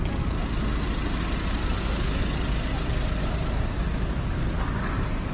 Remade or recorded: recorded